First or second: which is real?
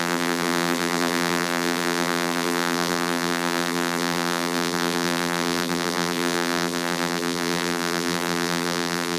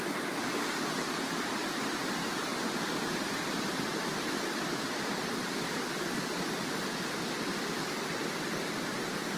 second